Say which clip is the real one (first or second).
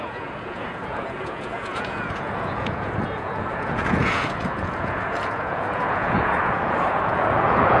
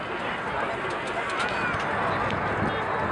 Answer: second